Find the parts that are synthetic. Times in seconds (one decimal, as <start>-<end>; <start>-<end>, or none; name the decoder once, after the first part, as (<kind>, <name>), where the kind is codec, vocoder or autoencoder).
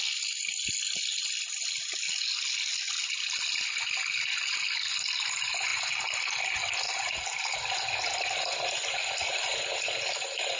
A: none